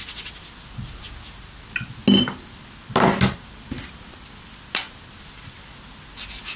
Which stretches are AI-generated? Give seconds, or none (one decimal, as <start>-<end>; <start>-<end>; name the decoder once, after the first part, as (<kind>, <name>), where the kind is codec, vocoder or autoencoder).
none